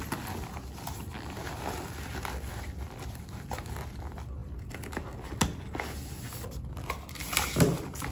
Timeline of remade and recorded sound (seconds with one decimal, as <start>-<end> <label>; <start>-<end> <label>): 0.0-8.1 recorded